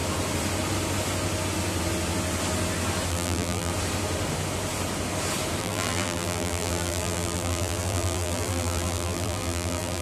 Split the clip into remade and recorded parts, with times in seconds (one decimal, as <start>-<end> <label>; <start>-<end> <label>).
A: 0.0-3.1 recorded; 3.1-3.7 remade; 3.7-5.6 recorded; 5.6-10.0 remade